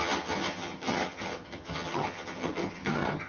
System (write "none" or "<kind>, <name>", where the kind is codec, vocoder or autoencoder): vocoder, HiFi-GAN